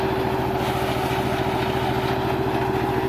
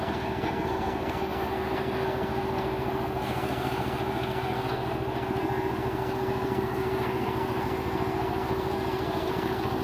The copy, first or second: second